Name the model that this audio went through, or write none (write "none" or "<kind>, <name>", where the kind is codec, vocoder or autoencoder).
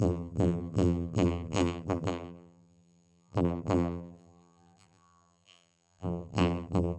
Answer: vocoder, BigVGAN v2